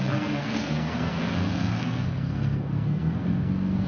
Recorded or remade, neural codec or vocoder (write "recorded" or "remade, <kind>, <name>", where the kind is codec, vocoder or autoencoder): remade, codec, SNAC